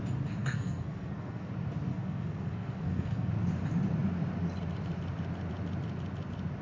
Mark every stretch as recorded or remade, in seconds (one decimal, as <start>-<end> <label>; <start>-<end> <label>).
0.0-0.4 recorded; 0.4-1.5 remade; 1.5-1.9 recorded; 1.9-3.3 remade; 3.3-6.6 recorded